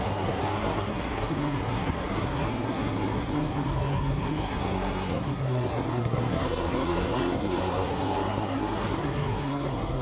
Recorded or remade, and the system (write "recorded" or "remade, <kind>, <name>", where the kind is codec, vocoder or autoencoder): remade, codec, SNAC